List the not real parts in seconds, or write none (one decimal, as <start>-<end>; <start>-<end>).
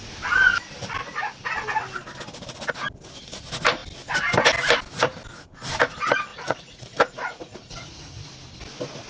6.3-8.3